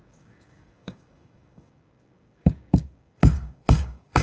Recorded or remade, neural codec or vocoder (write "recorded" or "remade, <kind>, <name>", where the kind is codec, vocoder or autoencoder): remade, codec, DAC